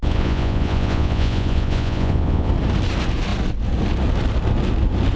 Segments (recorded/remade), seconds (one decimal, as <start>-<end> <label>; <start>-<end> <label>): 0.0-2.5 remade; 2.5-5.2 recorded